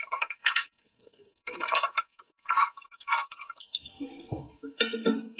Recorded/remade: remade